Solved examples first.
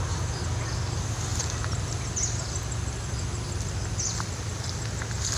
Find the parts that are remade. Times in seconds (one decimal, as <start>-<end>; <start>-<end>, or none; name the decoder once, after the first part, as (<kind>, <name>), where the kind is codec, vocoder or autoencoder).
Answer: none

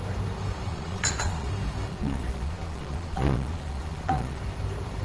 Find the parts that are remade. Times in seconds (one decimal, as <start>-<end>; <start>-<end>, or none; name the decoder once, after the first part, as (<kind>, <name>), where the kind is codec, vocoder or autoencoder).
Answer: 0.7-1.5 (vocoder, Vocos); 1.9-4.4

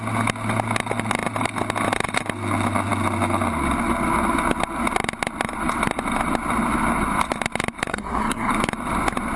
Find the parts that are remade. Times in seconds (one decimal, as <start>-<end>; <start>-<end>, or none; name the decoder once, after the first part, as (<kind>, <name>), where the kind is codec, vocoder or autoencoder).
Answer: 7.9-8.5 (codec, SNAC)

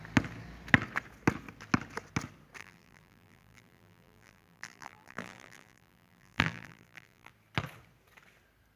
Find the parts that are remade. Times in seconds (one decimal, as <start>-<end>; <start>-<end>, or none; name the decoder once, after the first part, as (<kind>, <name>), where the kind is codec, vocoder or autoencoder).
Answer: 2.6-7.3 (vocoder, BigVGAN v2)

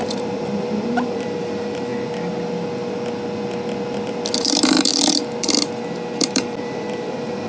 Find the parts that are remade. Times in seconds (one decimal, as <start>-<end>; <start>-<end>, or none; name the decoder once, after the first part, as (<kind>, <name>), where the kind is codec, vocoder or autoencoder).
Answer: 0.0-1.9 (vocoder, BigVGAN v2); 4.4-4.9; 6.3-7.5

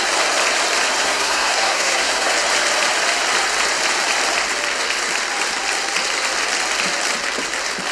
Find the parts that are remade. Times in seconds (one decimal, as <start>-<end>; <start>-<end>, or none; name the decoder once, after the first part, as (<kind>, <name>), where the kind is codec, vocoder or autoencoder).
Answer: 1.0-2.3 (codec, SNAC)

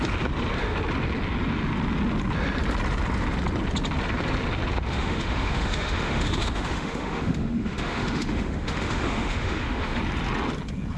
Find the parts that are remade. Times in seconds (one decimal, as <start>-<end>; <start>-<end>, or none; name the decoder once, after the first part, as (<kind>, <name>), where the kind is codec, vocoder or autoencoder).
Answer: 4.9-10.0 (autoencoder, DAC-VAE)